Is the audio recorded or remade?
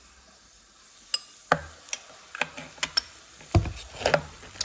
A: recorded